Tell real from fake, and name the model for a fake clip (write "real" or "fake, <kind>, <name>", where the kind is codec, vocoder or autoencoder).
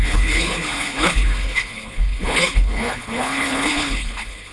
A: fake, codec, HILCodec